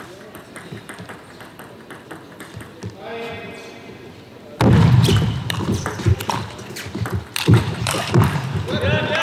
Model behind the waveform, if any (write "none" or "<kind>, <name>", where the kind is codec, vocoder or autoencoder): vocoder, BigVGAN v2